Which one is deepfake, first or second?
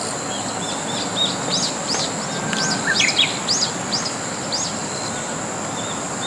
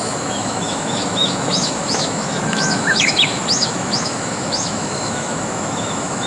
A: second